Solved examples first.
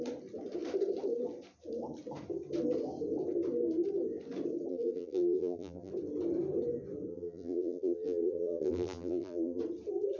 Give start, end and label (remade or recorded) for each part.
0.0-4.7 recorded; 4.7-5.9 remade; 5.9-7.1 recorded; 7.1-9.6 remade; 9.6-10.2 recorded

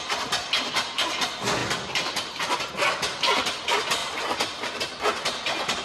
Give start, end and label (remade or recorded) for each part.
0.0-1.6 recorded; 1.6-2.7 remade; 2.7-5.8 recorded

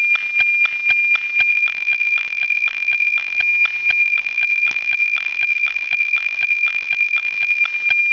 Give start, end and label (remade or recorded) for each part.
0.0-1.5 recorded; 1.5-3.4 remade; 3.4-4.0 recorded; 4.0-7.6 remade; 7.6-8.1 recorded

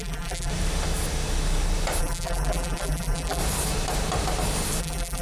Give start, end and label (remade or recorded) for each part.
0.0-0.5 remade; 0.5-2.0 recorded; 2.0-3.4 remade; 3.4-4.8 recorded; 4.8-5.2 remade